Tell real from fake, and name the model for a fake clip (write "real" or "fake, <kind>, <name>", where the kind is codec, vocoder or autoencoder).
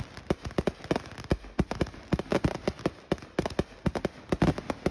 real